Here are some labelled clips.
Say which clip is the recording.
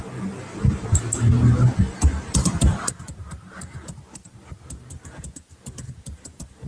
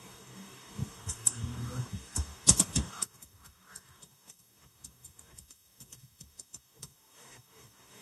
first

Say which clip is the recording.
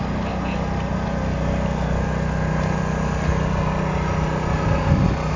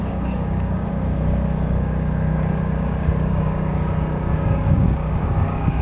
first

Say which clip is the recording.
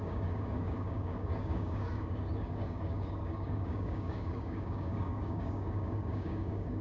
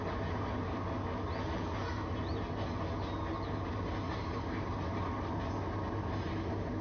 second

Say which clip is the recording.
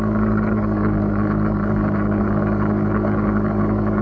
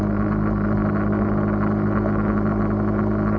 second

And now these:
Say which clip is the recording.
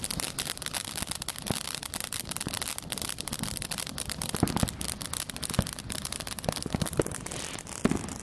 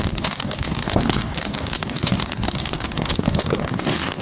first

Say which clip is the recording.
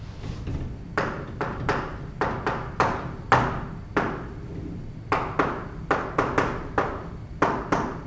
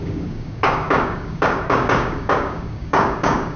first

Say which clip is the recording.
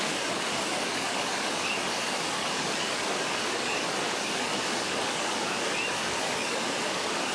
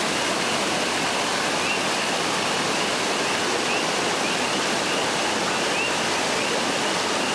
second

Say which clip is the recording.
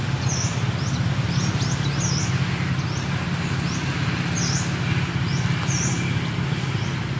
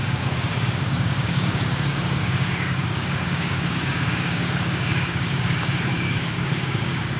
first